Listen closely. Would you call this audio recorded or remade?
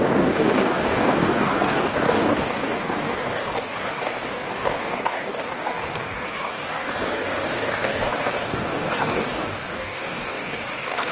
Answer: remade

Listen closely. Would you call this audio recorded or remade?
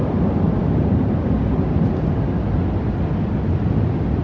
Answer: recorded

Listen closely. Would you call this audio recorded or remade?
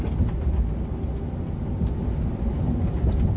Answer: recorded